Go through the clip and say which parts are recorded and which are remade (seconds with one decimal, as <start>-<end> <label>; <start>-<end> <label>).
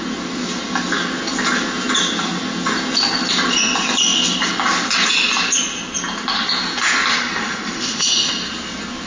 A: 0.0-7.1 recorded; 7.1-8.3 remade; 8.3-9.1 recorded